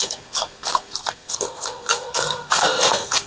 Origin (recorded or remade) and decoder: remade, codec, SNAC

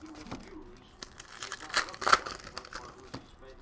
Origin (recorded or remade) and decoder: recorded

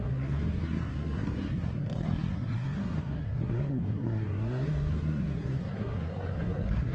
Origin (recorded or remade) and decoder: remade, codec, SNAC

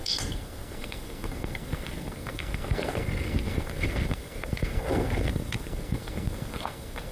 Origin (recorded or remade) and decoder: remade, codec, SNAC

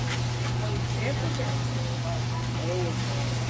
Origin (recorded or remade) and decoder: recorded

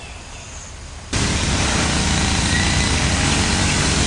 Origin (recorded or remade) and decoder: recorded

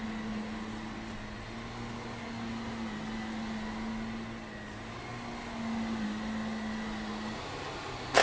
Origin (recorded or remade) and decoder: recorded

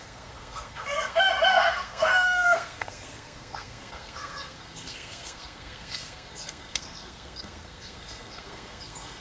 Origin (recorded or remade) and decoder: remade, codec, SNAC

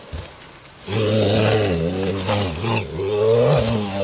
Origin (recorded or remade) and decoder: recorded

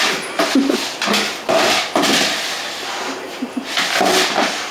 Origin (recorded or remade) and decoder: recorded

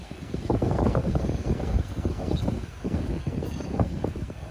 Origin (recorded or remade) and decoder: remade, codec, SNAC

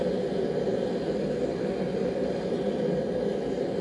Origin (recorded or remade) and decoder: recorded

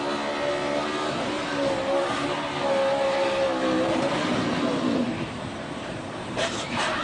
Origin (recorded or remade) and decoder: recorded